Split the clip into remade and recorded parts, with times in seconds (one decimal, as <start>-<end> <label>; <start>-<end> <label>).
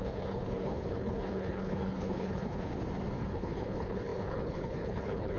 0.0-2.7 remade; 2.7-3.2 recorded; 3.2-5.4 remade